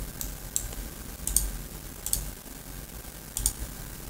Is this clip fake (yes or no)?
no